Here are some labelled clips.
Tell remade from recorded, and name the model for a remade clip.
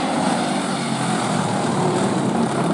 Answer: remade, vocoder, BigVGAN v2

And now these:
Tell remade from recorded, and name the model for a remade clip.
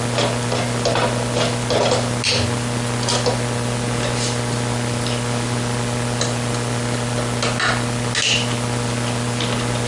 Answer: recorded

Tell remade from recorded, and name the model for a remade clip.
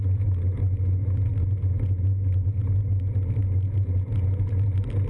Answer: recorded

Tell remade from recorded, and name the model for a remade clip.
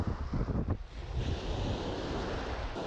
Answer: recorded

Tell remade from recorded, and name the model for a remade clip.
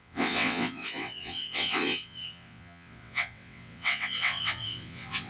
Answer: remade, vocoder, WaveNeXt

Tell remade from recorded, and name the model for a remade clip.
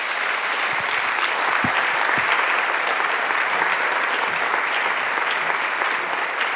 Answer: remade, vocoder, BigVGAN v2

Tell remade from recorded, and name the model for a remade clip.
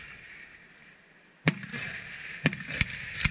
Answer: recorded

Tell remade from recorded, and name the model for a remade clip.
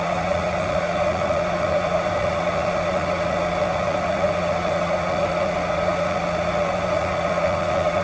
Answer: remade, vocoder, Vocos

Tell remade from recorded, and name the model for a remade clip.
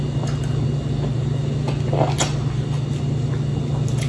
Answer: recorded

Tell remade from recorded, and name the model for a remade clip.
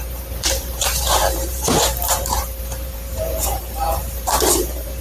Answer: remade, vocoder, BigVGAN v2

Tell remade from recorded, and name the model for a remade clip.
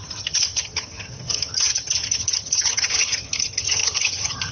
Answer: remade, vocoder, HiFi-GAN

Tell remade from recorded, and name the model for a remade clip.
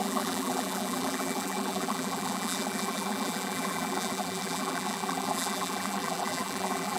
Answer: remade, vocoder, BigVGAN v2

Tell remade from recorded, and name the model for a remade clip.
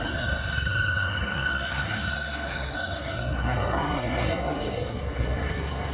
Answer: remade, codec, SNAC